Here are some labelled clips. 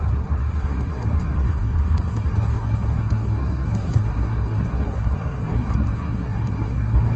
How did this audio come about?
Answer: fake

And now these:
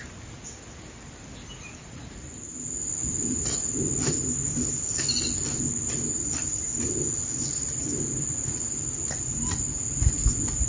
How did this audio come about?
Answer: real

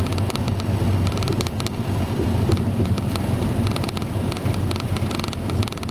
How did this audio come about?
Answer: fake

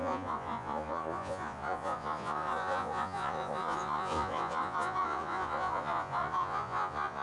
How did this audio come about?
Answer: fake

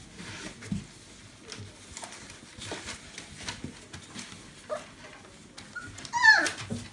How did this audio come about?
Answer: real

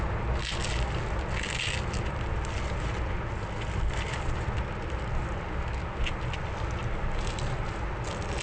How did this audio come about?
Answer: real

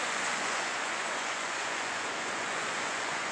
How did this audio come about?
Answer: fake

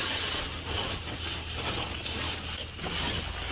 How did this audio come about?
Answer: real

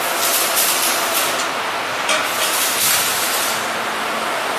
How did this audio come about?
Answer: real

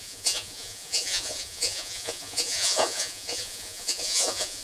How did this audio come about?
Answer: fake